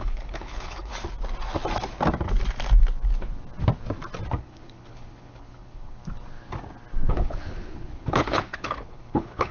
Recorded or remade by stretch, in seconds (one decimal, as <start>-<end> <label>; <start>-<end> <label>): 0.0-0.9 remade; 0.9-4.4 recorded; 4.4-6.0 remade; 6.0-7.1 recorded; 7.1-9.5 remade